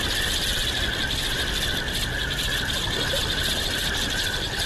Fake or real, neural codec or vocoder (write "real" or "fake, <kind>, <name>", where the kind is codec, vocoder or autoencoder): real